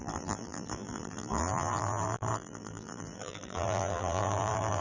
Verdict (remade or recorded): remade